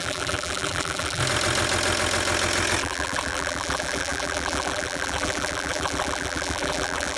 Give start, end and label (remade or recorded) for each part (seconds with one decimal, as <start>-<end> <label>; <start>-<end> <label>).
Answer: 0.0-1.2 remade; 1.2-2.8 recorded; 2.8-7.2 remade